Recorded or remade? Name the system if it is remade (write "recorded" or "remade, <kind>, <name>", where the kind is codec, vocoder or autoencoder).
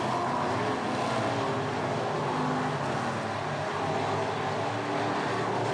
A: recorded